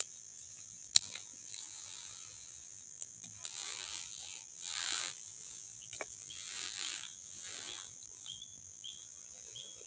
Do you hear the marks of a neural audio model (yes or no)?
yes